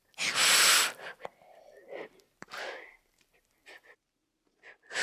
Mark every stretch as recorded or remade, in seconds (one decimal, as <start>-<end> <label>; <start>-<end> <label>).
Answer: 0.0-0.7 recorded; 0.7-1.8 remade; 1.8-2.9 recorded; 2.9-5.0 remade